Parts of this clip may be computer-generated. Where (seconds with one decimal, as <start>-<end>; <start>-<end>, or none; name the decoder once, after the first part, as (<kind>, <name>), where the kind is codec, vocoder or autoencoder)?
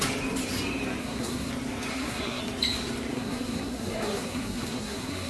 1.0-1.5 (codec, SNAC); 1.9-2.4; 3.1-5.3